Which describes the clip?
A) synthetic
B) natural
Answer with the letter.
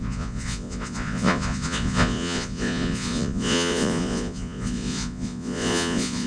A